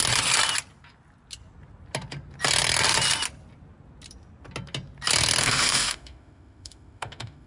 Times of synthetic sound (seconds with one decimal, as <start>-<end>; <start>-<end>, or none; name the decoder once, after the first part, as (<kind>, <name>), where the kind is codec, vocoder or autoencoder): 5.4-7.5 (autoencoder, DAC-VAE)